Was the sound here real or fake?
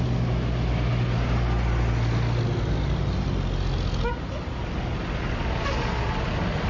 real